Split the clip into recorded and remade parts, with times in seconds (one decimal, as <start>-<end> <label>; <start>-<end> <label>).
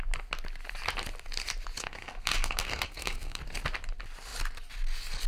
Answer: 0.0-1.8 recorded; 1.8-3.4 remade; 3.4-5.3 recorded